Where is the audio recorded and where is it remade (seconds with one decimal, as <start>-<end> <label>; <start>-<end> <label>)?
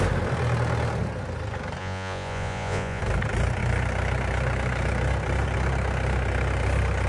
0.0-1.8 recorded; 1.8-3.0 remade; 3.0-7.1 recorded